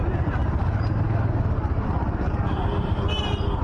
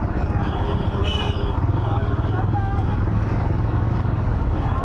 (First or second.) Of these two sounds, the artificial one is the second